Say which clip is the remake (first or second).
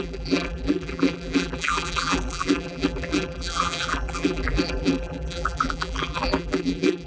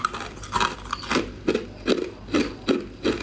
first